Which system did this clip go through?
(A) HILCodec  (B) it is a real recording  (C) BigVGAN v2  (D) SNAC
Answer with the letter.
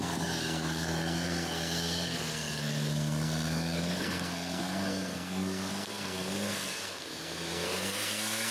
D